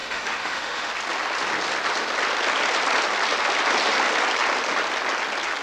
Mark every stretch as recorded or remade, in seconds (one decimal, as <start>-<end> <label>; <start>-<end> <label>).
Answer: 0.0-0.9 remade; 0.9-5.6 recorded